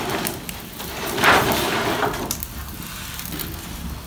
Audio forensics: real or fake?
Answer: real